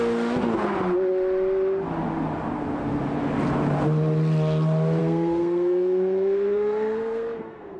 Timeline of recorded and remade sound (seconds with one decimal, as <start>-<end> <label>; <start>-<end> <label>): 0.0-5.0 recorded; 5.0-7.8 remade